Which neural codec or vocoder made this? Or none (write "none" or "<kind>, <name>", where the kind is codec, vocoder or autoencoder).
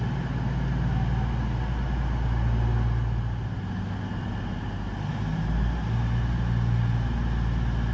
none